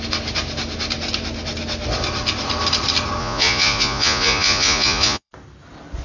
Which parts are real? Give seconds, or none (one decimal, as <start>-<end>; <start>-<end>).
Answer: 0.0-3.2; 5.3-6.0